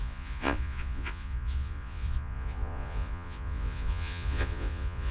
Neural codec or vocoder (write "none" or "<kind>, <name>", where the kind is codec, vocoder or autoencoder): vocoder, Vocos